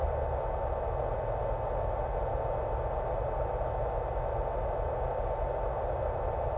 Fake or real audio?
real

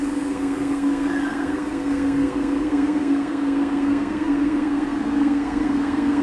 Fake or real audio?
fake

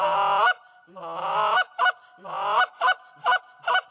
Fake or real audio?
real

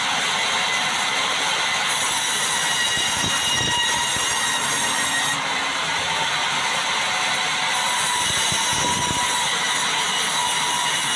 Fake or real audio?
real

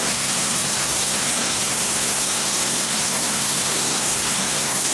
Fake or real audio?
fake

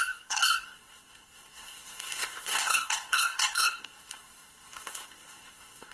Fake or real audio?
fake